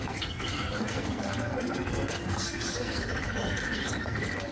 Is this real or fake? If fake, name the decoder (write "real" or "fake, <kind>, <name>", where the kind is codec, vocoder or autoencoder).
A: fake, codec, SNAC